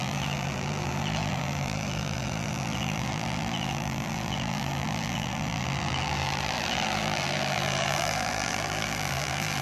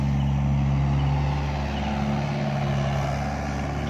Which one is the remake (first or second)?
first